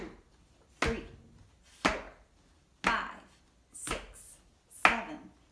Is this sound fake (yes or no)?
no